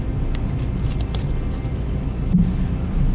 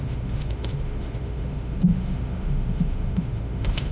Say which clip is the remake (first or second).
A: second